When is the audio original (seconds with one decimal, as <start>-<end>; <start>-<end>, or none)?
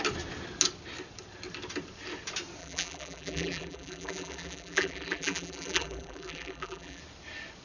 0.0-2.6; 7.0-7.6